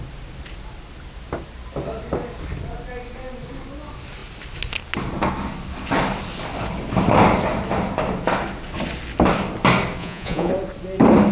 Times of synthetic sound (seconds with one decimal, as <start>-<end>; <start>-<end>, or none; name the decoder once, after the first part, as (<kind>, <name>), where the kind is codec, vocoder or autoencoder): 10.0-10.5 (vocoder, Vocos)